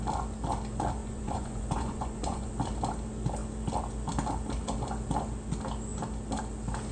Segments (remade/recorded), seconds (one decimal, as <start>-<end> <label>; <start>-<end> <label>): 0.0-1.0 recorded; 1.0-2.5 remade; 2.5-6.9 recorded